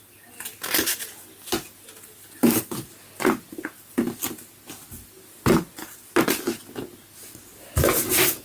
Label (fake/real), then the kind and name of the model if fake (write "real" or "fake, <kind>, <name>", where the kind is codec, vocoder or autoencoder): real